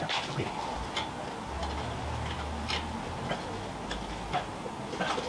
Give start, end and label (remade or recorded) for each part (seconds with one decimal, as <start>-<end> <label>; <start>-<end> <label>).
0.0-5.3 recorded